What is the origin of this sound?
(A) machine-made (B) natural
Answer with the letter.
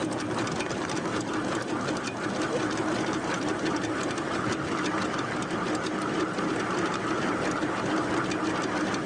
B